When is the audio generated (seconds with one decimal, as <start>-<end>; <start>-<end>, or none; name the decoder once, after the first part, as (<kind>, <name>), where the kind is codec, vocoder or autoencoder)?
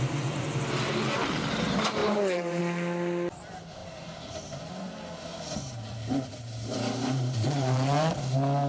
2.0-2.6 (vocoder, BigVGAN v2); 5.3-8.2